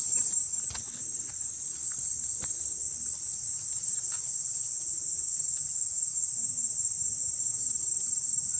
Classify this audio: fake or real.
real